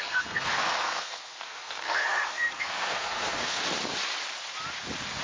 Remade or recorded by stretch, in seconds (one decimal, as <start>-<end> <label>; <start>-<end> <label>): 0.0-3.6 remade; 3.6-5.2 recorded